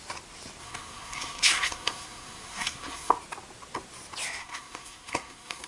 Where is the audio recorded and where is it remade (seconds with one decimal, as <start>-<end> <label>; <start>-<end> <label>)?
0.0-0.6 recorded; 0.6-3.1 remade; 3.1-4.4 recorded; 4.4-5.7 remade